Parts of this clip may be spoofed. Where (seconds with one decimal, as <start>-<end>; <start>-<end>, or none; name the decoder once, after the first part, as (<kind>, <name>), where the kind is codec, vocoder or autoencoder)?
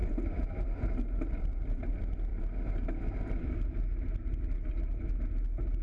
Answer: 0.0-1.9 (vocoder, BigVGAN v2)